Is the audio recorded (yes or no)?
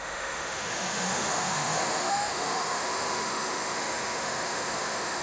no